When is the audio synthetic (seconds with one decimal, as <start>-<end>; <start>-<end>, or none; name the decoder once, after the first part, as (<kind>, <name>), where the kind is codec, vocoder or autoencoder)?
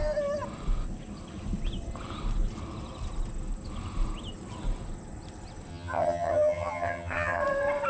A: 5.7-7.4 (vocoder, HiFi-GAN)